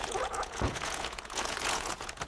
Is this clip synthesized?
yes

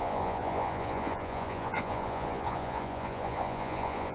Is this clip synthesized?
yes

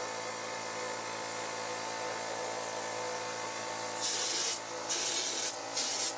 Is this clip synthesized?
no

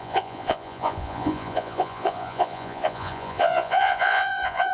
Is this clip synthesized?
yes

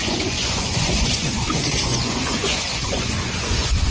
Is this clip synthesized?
yes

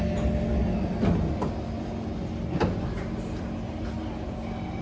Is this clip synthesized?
no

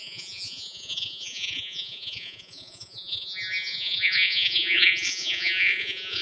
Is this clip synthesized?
yes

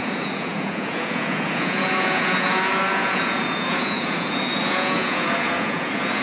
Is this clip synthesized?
yes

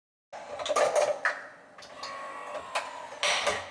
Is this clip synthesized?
no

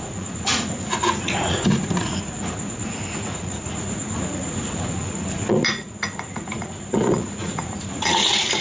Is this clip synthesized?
yes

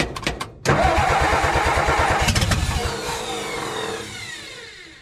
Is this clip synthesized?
no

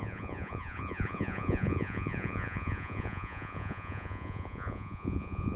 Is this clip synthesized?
yes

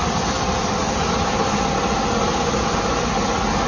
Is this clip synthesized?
no